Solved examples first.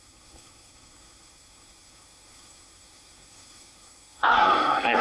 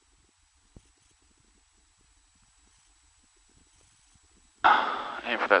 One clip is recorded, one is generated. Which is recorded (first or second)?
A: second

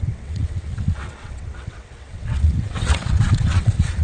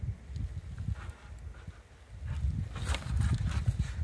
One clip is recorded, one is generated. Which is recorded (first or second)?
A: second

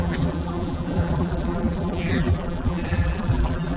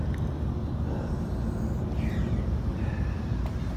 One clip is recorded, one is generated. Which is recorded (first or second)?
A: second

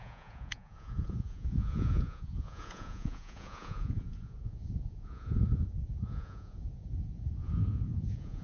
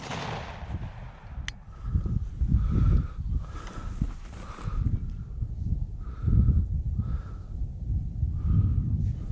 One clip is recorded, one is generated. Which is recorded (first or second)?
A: second